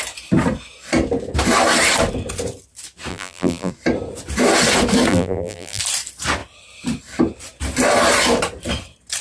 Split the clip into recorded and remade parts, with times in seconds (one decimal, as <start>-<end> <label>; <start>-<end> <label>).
0.0-3.1 recorded; 3.1-3.7 remade; 3.7-5.1 recorded; 5.1-5.8 remade; 5.8-9.2 recorded